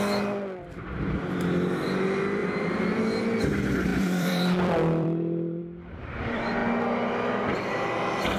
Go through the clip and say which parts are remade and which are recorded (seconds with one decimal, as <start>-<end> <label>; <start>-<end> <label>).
0.0-2.4 recorded; 2.4-3.0 remade; 3.0-3.9 recorded; 3.9-5.6 remade; 5.6-8.4 recorded